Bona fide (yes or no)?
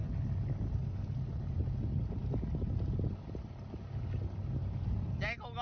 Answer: yes